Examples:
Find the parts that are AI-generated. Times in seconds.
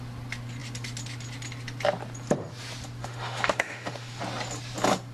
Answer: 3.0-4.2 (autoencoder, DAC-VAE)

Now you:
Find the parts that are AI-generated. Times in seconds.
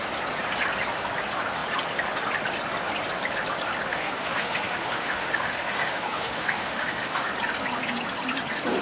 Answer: 3.9-7.3 (autoencoder, DAC-VAE)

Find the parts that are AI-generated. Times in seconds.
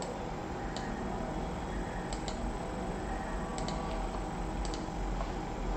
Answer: none